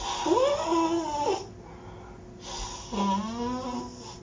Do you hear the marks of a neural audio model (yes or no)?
no